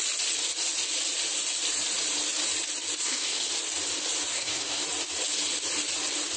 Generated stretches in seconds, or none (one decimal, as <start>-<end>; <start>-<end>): 3.0-3.5; 4.3-4.8